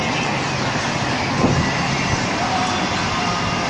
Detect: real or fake real